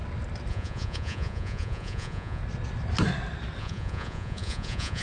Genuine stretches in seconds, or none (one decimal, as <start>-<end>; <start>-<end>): 0.0-0.5; 2.4-3.6